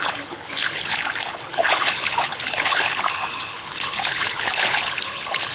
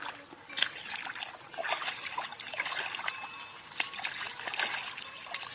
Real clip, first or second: second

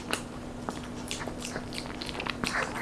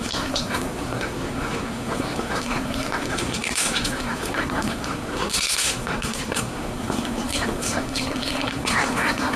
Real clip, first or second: first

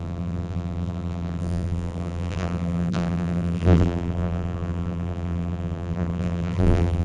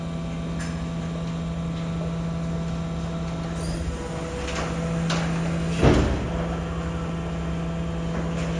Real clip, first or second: second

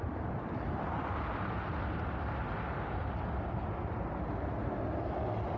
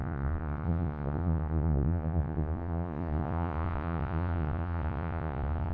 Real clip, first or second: first